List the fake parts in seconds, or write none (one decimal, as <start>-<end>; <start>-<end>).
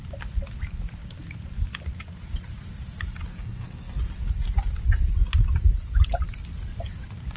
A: 3.3-4.0